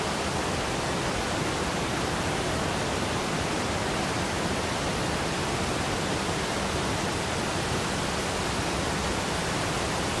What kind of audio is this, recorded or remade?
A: remade